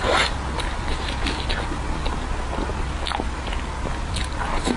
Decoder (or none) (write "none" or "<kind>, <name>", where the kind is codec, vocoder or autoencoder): none